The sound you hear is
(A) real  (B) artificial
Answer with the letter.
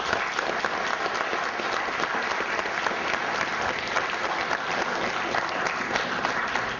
A